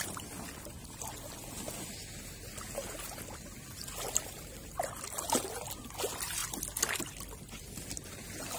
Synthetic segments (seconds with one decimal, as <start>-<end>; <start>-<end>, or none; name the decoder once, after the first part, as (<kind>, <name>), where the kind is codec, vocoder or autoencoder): none